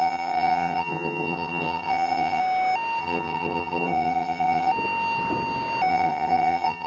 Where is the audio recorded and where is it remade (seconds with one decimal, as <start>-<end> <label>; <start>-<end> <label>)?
0.0-2.4 remade; 2.4-3.0 recorded; 3.0-4.7 remade; 4.7-5.9 recorded; 5.9-6.9 remade